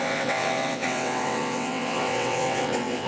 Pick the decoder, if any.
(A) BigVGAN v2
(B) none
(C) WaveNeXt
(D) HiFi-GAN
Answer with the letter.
C